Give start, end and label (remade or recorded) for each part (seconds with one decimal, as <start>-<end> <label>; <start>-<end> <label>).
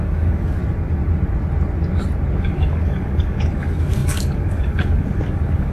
0.0-0.6 remade; 0.6-2.4 recorded; 2.4-5.7 remade